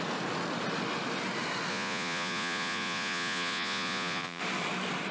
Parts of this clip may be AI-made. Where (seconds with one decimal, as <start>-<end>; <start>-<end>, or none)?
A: 1.7-4.4